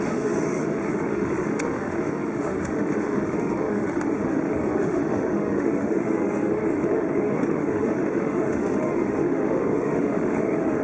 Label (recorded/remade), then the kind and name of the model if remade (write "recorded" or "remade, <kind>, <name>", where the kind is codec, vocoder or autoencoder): remade, autoencoder, DAC-VAE